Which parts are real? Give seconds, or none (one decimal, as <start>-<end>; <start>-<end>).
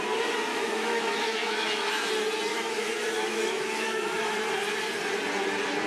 0.0-0.5; 2.1-2.5; 4.5-5.9